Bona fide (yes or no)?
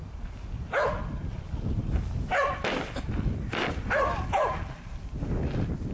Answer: yes